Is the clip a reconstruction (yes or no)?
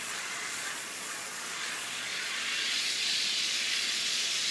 yes